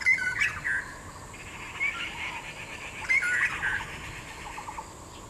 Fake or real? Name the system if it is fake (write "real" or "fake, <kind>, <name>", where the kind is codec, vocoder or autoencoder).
real